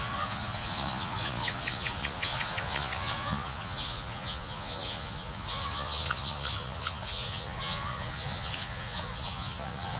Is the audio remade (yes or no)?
yes